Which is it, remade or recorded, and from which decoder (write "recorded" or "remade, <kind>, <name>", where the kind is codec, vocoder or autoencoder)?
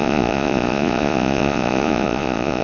remade, vocoder, Vocos